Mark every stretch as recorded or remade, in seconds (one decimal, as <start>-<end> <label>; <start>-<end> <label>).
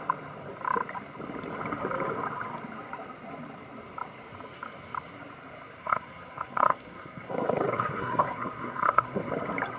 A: 0.0-5.8 recorded; 5.8-9.3 remade; 9.3-9.8 recorded